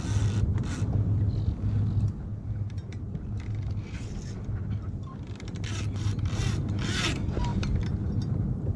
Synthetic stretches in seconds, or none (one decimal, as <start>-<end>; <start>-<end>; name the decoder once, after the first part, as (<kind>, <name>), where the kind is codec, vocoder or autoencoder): none